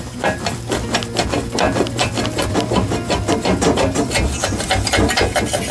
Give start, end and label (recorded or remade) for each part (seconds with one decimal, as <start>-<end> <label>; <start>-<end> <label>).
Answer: 0.0-5.7 recorded